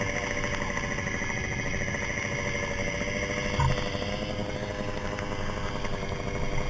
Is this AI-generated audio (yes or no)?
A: no